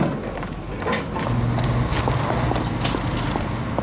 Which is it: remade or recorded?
recorded